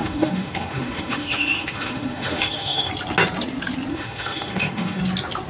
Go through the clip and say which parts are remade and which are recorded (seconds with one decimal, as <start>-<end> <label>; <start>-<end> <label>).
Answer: 0.0-2.9 remade; 2.9-3.9 recorded; 3.9-5.0 remade; 5.0-5.5 recorded

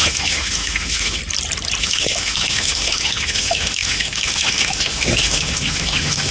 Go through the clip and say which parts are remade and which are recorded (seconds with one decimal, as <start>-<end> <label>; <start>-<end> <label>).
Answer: 0.0-1.2 remade; 1.2-1.8 recorded; 1.8-6.3 remade

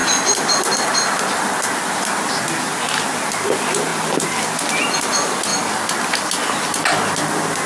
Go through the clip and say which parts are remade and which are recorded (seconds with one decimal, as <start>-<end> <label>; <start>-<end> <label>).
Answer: 0.0-7.7 recorded

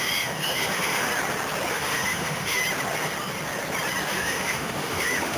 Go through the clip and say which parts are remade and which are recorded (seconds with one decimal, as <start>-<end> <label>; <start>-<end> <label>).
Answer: 0.0-1.1 remade; 1.1-1.7 recorded; 1.7-2.6 remade; 2.6-4.1 recorded; 4.1-5.4 remade

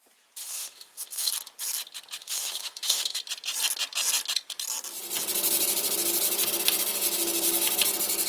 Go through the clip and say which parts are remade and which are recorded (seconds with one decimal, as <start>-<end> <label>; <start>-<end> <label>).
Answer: 0.0-0.4 recorded; 0.4-1.3 remade; 1.3-2.2 recorded; 2.2-3.2 remade; 3.2-8.3 recorded

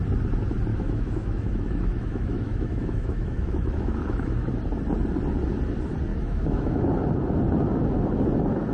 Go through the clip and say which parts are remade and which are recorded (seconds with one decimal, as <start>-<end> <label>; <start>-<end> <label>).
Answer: 0.0-0.7 recorded; 0.7-4.5 remade; 4.5-6.1 recorded; 6.1-6.8 remade; 6.8-8.7 recorded

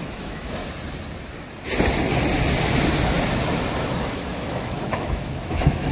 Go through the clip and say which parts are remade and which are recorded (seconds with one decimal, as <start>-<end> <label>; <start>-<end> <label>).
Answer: 0.0-0.6 remade; 0.6-4.1 recorded; 4.1-5.9 remade

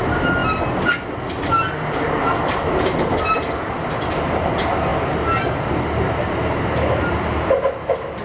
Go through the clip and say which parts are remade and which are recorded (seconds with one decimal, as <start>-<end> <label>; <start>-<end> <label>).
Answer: 0.0-8.2 recorded